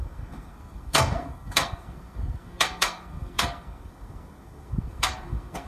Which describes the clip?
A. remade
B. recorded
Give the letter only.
A